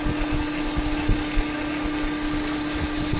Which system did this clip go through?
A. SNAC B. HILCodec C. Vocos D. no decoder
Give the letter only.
D